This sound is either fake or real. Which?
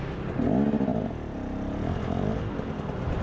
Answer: real